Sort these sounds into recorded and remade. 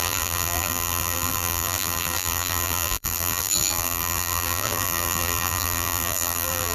remade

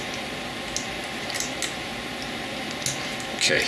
recorded